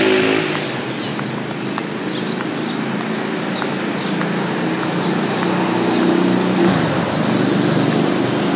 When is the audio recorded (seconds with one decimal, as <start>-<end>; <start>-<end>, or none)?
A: 0.0-8.6